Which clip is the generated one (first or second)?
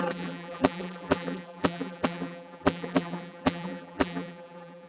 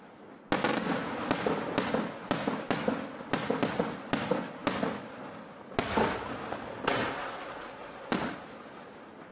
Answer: first